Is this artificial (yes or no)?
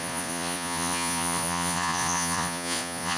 yes